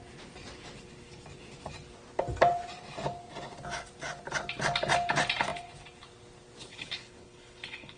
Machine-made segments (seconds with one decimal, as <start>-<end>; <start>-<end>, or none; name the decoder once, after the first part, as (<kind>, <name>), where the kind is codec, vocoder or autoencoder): 6.7-8.0 (codec, HILCodec)